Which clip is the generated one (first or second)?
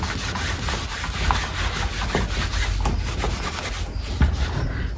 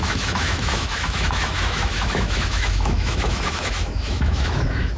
second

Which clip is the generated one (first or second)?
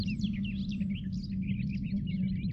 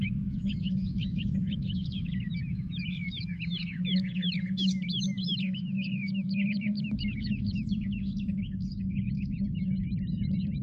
second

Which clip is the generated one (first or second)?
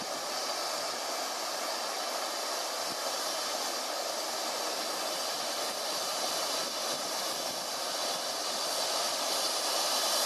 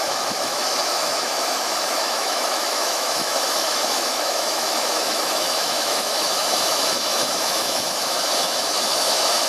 second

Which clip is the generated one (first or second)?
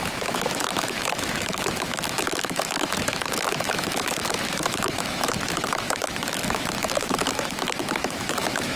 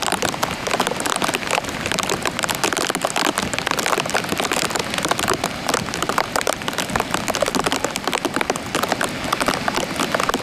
first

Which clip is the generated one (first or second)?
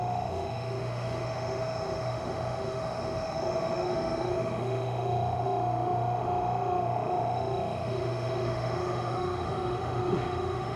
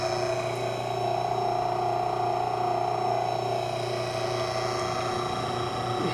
first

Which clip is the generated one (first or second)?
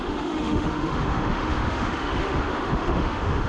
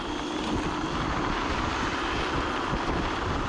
first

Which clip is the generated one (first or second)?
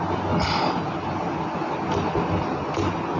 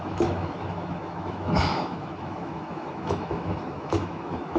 second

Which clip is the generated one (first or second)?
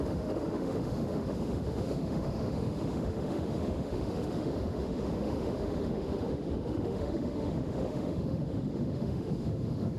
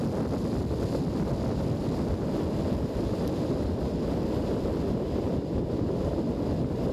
first